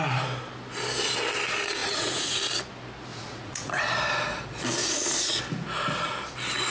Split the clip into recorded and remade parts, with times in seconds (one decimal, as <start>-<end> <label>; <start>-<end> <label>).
0.0-1.8 recorded; 1.8-2.4 remade; 2.4-3.1 recorded; 3.1-3.8 remade; 3.8-4.8 recorded; 4.8-5.4 remade; 5.4-6.7 recorded